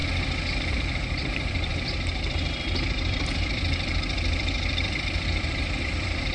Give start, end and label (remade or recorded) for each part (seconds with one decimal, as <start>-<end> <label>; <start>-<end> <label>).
0.0-0.7 recorded; 0.7-6.3 remade

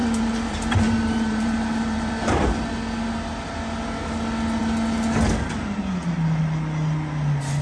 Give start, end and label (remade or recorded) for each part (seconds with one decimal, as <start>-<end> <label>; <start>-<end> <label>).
0.0-2.1 remade; 2.1-7.6 recorded

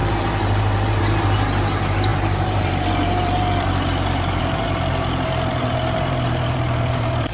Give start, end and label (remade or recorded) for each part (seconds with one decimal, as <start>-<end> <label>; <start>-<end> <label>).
0.0-7.3 remade

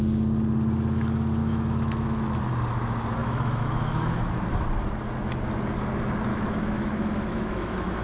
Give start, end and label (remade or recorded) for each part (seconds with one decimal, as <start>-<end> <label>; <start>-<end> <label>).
0.0-1.4 recorded; 1.4-2.4 remade; 2.4-3.2 recorded; 3.2-4.4 remade; 4.4-6.3 recorded; 6.3-8.0 remade

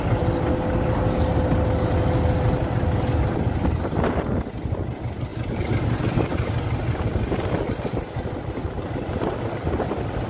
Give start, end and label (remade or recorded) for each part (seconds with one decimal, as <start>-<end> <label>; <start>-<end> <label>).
0.0-10.3 recorded

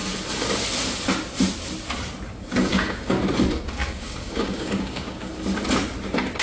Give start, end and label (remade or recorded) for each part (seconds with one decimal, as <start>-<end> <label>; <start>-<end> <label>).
0.0-2.7 recorded; 2.7-3.2 remade; 3.2-3.8 recorded; 3.8-5.3 remade; 5.3-6.4 recorded

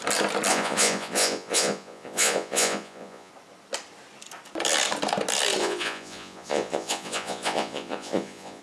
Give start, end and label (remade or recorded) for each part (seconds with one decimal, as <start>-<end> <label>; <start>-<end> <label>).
0.0-0.5 recorded; 0.5-3.3 remade; 3.3-5.6 recorded; 5.6-8.6 remade

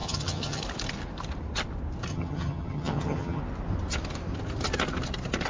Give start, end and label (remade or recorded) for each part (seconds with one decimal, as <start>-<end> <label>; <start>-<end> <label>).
0.0-0.6 remade; 0.6-2.1 recorded; 2.1-3.4 remade; 3.4-5.5 recorded